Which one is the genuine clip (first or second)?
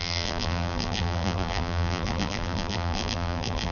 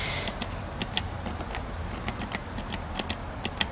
second